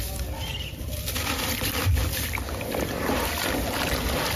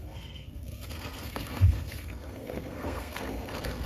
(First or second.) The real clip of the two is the first